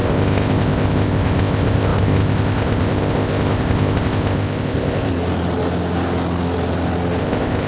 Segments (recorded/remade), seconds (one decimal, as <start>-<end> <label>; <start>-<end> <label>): 0.0-5.1 remade; 5.1-7.2 recorded; 7.2-7.7 remade